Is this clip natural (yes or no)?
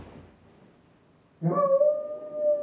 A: yes